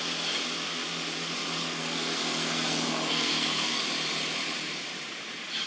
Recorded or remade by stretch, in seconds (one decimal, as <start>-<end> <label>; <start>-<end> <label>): 0.0-1.6 recorded; 1.6-3.8 remade; 3.8-5.7 recorded